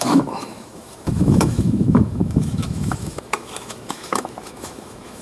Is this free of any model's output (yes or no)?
no